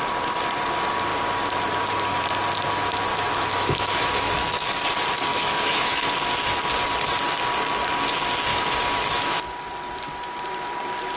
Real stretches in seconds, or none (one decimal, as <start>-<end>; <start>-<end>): 0.0-3.1; 4.7-5.3; 6.1-8.5; 9.4-11.2